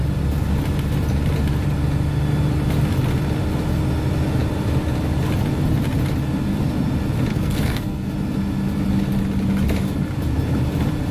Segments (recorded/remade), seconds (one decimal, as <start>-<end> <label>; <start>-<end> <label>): 0.0-7.3 recorded; 7.3-8.1 remade; 8.1-11.1 recorded